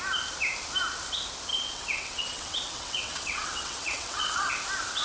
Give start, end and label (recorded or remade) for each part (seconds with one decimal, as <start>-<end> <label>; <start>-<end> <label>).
0.0-1.5 recorded; 1.5-4.5 remade; 4.5-5.0 recorded